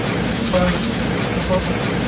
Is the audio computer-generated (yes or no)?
no